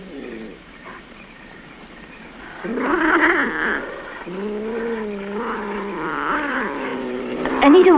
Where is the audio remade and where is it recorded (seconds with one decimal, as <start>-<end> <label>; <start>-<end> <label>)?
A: 0.0-2.7 remade; 2.7-6.5 recorded; 6.5-8.0 remade